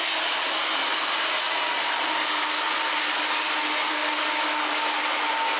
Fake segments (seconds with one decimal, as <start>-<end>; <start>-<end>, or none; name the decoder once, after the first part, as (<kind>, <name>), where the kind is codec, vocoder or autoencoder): none